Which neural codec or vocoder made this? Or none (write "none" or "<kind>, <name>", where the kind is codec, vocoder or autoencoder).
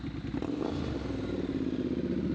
none